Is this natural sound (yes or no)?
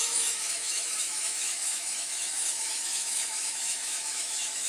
no